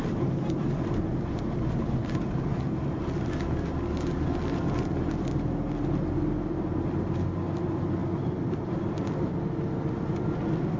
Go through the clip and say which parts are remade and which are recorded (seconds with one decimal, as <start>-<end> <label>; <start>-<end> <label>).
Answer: 0.0-8.0 recorded; 8.0-8.9 remade; 8.9-10.8 recorded